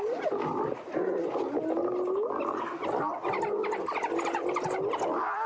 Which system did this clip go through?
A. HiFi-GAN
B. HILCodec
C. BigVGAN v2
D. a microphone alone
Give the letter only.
D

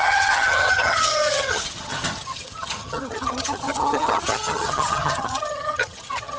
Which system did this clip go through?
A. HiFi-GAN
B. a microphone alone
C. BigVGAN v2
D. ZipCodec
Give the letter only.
A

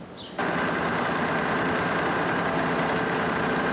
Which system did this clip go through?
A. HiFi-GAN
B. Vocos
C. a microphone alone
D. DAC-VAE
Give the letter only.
C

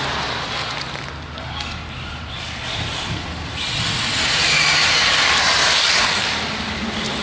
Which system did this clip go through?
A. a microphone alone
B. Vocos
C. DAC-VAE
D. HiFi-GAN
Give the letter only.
A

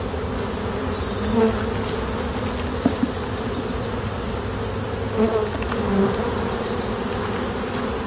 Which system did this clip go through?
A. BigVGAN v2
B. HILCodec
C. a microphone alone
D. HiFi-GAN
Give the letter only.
C